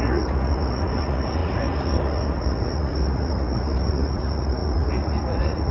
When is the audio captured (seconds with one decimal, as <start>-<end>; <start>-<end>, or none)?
none